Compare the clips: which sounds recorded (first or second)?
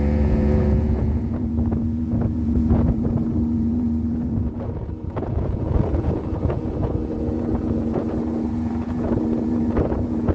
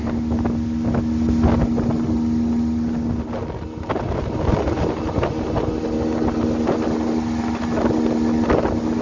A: second